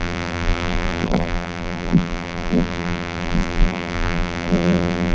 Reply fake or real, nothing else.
fake